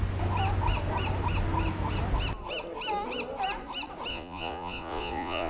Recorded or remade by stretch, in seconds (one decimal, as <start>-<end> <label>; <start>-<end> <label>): 0.0-4.1 recorded; 4.1-5.5 remade